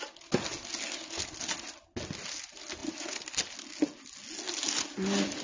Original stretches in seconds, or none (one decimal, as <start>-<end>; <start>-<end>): 0.0-5.4